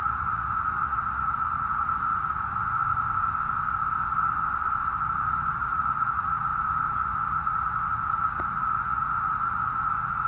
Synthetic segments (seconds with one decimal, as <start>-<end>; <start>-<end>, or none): 0.0-2.8; 5.5-6.5; 7.0-10.3